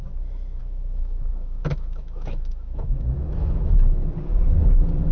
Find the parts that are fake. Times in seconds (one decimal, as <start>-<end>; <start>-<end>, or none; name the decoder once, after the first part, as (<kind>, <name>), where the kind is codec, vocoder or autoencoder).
0.6-3.7 (autoencoder, DAC-VAE)

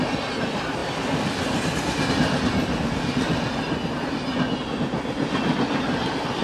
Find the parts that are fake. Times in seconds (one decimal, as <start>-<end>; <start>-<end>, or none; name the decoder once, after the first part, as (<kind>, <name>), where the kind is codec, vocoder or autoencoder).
none

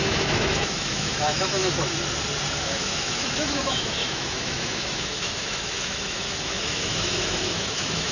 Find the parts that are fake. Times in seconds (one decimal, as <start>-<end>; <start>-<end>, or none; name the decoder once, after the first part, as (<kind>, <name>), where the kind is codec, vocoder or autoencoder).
0.0-1.6 (autoencoder, DAC-VAE); 2.5-8.1

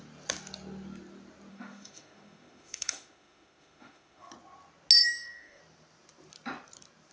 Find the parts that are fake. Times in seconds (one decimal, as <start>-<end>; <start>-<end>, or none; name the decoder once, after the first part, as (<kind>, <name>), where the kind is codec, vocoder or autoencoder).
1.5-4.3 (autoencoder, DAC-VAE); 5.0-5.6

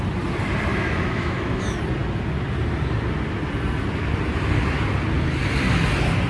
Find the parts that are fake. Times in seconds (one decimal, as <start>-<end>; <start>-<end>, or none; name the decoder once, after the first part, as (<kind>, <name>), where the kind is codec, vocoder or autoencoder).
0.7-1.6 (autoencoder, DAC-VAE)

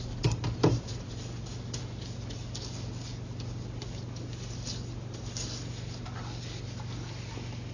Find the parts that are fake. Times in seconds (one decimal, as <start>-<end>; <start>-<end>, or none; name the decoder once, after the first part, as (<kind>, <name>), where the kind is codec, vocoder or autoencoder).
none

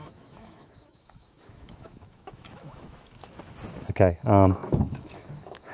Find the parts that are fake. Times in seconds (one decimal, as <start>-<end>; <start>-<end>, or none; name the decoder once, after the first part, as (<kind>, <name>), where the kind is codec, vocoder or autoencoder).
0.0-3.2 (autoencoder, DAC-VAE); 3.9-5.7